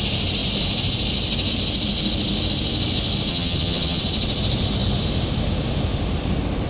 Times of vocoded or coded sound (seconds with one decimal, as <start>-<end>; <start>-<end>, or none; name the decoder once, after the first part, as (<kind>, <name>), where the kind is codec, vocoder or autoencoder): 3.3-4.0 (vocoder, HiFi-GAN)